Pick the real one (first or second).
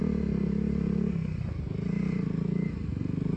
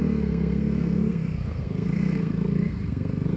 first